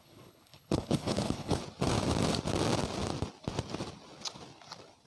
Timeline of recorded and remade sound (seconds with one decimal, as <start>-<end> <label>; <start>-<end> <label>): 0.0-1.6 remade; 1.6-5.1 recorded